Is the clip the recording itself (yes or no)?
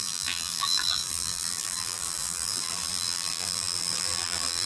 no